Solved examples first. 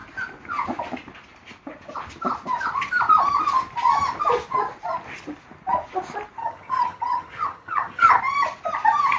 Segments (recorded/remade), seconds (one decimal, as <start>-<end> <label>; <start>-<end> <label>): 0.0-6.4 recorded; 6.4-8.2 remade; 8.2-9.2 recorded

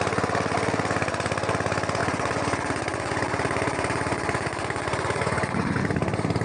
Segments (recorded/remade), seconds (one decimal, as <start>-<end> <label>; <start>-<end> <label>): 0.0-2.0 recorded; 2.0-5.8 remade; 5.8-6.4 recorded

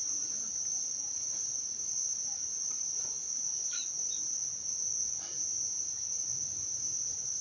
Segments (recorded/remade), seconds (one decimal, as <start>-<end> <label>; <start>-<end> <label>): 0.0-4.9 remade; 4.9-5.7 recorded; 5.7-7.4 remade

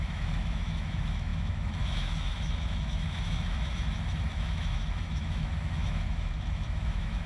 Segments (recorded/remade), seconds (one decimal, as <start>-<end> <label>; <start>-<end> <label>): 0.0-7.3 remade